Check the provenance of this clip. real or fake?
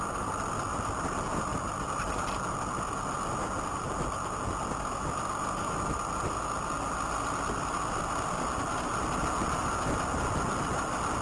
real